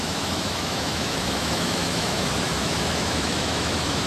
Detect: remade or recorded remade